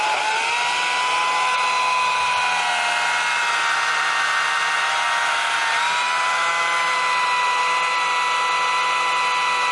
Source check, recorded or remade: recorded